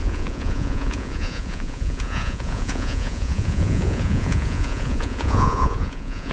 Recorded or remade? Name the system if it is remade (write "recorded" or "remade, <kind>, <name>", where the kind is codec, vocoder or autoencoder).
remade, vocoder, Vocos